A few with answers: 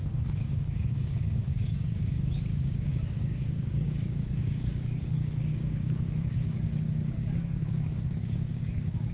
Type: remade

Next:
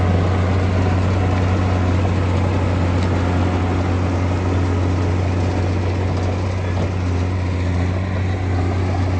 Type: recorded